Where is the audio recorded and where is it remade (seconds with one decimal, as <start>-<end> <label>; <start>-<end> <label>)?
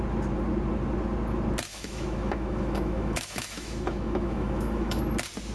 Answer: 0.0-1.7 recorded; 1.7-5.0 remade; 5.0-5.5 recorded